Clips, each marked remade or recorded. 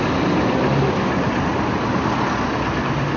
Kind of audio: recorded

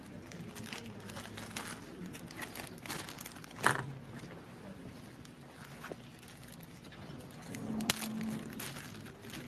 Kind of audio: recorded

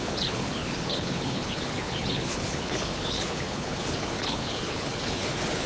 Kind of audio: remade